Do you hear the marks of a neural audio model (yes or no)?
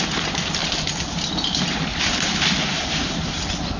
no